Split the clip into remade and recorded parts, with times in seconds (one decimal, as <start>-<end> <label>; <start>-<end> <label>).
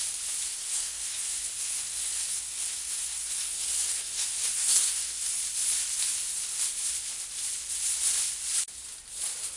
0.0-0.5 recorded; 0.5-5.4 remade; 5.4-9.6 recorded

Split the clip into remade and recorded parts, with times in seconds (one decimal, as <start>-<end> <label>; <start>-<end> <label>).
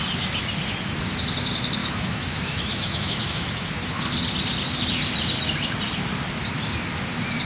0.0-1.8 recorded; 1.8-3.7 remade; 3.7-7.4 recorded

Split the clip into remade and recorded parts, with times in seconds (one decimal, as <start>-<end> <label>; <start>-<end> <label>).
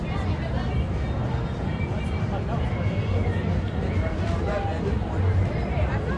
0.0-6.2 remade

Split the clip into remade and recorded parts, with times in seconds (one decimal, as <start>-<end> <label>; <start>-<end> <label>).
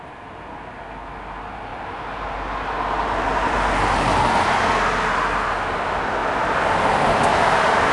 0.0-1.7 recorded; 1.7-3.8 remade; 3.8-7.9 recorded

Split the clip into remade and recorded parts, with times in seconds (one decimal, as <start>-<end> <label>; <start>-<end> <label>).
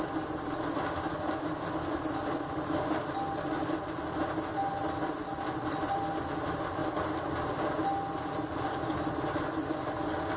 0.0-10.4 recorded